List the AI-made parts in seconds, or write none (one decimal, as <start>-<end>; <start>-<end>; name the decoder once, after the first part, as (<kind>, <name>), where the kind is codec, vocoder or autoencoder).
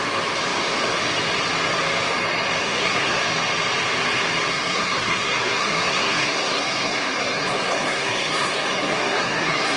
2.6-3.2 (codec, SNAC); 4.5-9.8